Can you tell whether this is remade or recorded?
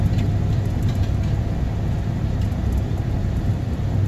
recorded